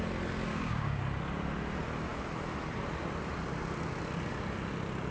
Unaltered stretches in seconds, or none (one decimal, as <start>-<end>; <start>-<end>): 0.0-0.5; 1.0-5.1